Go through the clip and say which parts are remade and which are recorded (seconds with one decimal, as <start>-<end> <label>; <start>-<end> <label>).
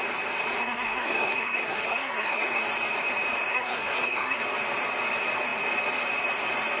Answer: 0.0-0.6 recorded; 0.6-2.6 remade; 2.6-3.5 recorded; 3.5-4.4 remade; 4.4-6.8 recorded